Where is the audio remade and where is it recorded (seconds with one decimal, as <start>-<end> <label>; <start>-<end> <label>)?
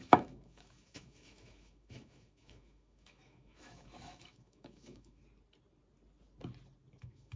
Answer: 0.0-5.2 remade; 5.2-7.0 recorded; 7.0-7.4 remade